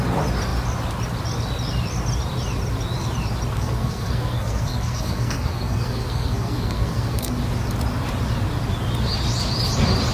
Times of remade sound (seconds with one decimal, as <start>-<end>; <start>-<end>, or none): 3.5-7.3